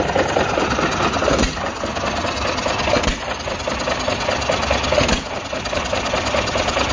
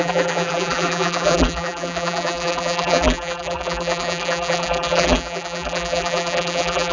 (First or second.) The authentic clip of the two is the first